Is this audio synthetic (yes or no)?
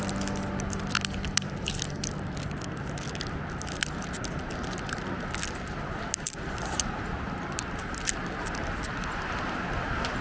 no